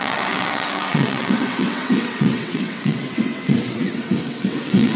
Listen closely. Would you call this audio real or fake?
fake